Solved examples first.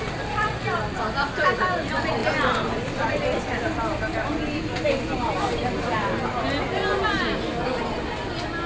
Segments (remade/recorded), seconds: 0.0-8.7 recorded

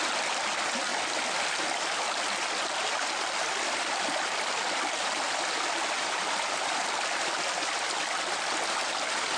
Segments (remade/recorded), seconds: 0.0-9.4 recorded

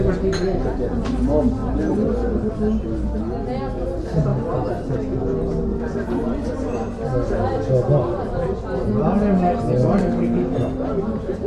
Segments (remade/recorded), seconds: 0.0-11.5 recorded